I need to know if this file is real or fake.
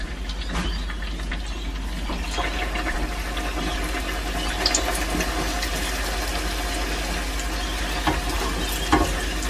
real